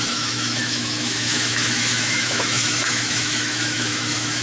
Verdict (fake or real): fake